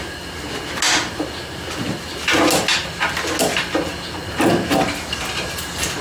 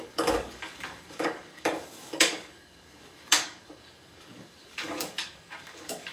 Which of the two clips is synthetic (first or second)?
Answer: second